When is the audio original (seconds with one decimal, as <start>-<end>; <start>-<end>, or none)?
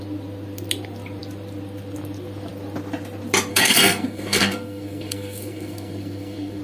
0.0-3.5